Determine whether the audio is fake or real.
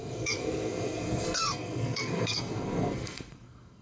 fake